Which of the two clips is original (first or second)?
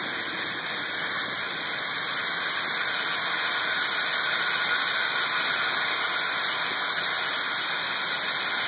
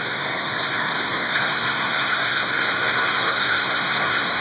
first